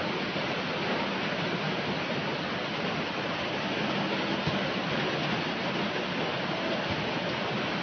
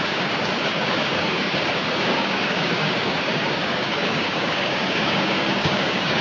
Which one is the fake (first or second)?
second